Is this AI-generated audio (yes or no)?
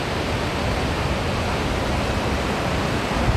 no